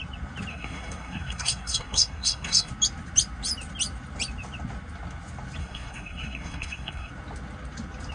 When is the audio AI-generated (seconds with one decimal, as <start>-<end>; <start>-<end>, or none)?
0.5-2.7; 5.6-7.1